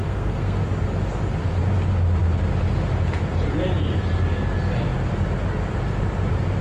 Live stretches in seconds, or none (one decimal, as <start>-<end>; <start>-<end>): 0.6-6.6